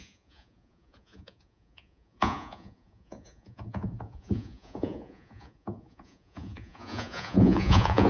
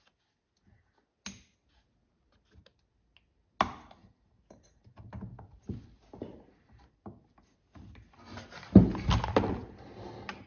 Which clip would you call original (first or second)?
second